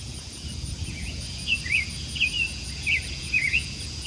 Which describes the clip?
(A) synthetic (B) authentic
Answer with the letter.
A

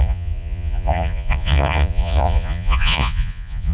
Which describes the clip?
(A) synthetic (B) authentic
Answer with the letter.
A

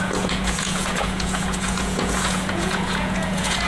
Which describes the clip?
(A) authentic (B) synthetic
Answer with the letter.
B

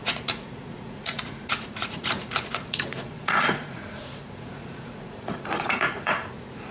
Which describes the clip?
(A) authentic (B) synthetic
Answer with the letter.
B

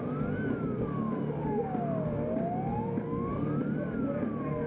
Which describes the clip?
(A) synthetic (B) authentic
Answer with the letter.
B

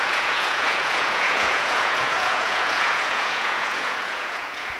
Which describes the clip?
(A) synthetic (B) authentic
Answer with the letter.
A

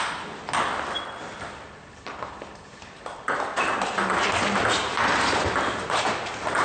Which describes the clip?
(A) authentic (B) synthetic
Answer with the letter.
A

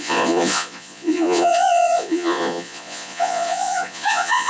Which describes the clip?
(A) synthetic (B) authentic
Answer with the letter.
A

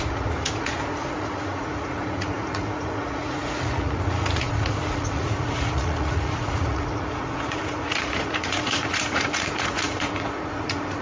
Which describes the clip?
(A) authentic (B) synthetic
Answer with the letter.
B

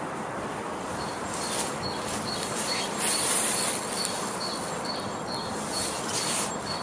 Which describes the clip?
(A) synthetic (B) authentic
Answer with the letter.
B